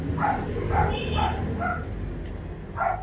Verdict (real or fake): real